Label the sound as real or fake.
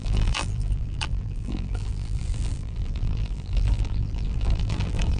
fake